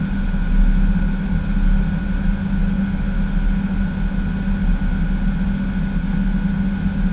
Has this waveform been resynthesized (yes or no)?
no